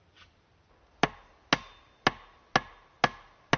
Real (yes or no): yes